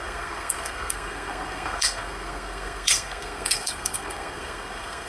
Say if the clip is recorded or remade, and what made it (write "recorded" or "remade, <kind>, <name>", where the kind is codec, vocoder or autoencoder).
remade, codec, SNAC